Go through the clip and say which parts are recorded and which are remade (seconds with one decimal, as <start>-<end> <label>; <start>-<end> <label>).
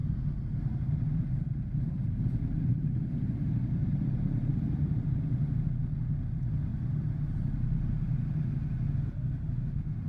0.0-5.1 remade; 5.1-6.7 recorded; 6.7-8.0 remade; 8.0-10.1 recorded